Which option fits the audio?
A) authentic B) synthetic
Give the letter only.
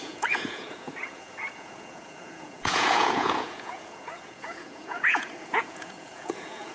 B